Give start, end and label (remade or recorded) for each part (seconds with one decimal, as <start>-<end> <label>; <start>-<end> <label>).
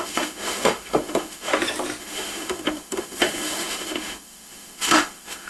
0.0-1.5 remade; 1.5-2.0 recorded; 2.0-5.5 remade